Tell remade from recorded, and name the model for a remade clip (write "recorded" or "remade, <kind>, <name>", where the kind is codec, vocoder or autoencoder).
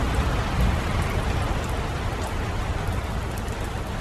recorded